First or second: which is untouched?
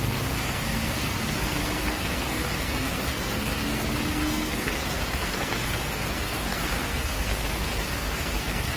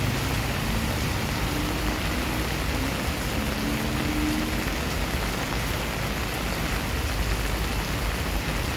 second